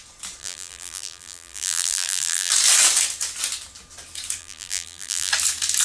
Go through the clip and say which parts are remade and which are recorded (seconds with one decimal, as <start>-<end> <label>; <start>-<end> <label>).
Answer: 0.0-0.4 recorded; 0.4-2.5 remade; 2.5-4.4 recorded; 4.4-5.3 remade; 5.3-5.8 recorded